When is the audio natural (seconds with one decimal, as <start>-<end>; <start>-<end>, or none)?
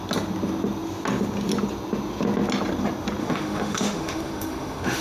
0.0-3.2